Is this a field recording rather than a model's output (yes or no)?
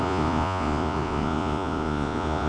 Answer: no